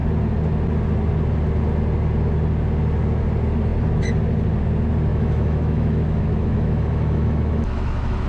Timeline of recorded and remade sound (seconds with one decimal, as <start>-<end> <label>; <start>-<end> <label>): 0.0-5.1 recorded; 5.1-8.3 remade